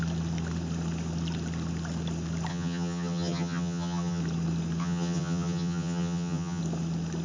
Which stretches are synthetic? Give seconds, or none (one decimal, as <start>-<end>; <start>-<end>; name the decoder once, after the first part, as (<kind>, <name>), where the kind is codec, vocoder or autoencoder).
2.5-4.2 (vocoder, HiFi-GAN); 4.8-6.6